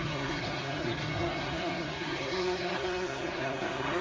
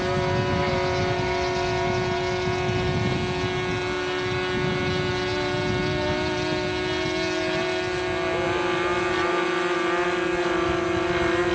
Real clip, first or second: second